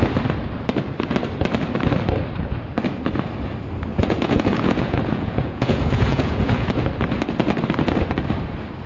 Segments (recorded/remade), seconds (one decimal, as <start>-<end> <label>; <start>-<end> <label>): 0.0-3.9 recorded; 3.9-6.7 remade; 6.7-8.9 recorded